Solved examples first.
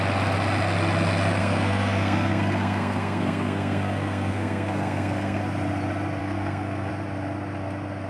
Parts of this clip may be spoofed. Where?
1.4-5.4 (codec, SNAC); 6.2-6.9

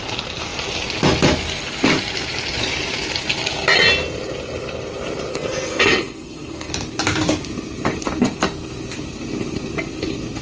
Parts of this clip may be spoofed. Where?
5.3-6.7 (codec, SNAC)

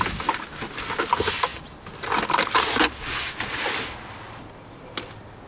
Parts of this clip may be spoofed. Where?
none

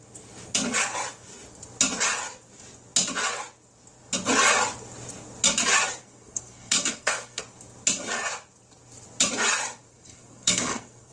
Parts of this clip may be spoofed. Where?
6.0-7.4 (codec, SNAC); 9.9-11.1